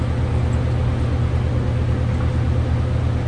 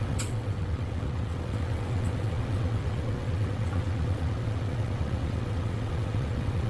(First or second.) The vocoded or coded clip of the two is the second